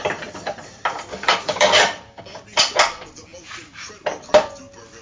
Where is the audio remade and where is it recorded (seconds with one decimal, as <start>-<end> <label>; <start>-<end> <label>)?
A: 0.0-1.1 recorded; 1.1-2.2 remade; 2.2-5.0 recorded